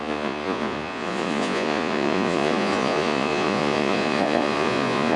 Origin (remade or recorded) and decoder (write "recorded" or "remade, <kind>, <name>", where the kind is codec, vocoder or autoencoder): remade, vocoder, Vocos